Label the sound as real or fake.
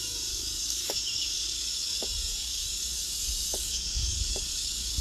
fake